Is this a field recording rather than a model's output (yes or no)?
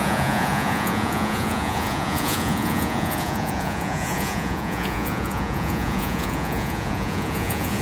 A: no